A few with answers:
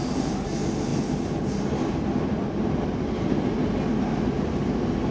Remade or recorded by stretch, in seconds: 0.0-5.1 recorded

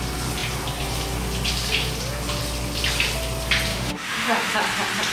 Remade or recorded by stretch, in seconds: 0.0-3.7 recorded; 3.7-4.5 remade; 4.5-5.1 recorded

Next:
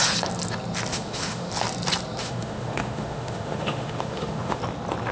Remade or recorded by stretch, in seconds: 0.0-0.9 recorded; 0.9-1.5 remade; 1.5-2.2 recorded; 2.2-4.6 remade; 4.6-5.1 recorded

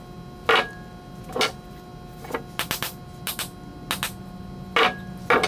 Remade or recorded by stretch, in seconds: 0.0-5.5 recorded

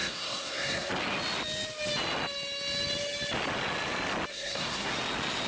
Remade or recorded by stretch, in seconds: 0.0-0.9 remade; 0.9-4.3 recorded; 4.3-4.9 remade; 4.9-5.5 recorded

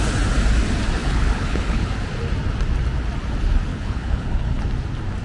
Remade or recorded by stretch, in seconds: 0.0-1.0 recorded; 1.0-1.9 remade; 1.9-3.7 recorded; 3.7-4.6 remade; 4.6-5.2 recorded

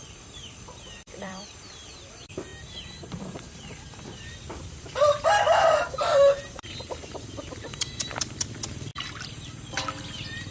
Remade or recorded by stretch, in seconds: 0.0-2.5 remade; 2.5-3.1 recorded; 3.1-8.9 remade; 8.9-10.5 recorded